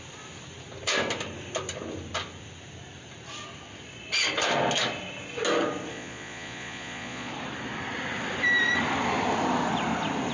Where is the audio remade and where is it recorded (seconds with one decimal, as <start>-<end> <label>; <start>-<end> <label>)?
0.0-5.9 recorded; 5.9-7.3 remade; 7.3-10.3 recorded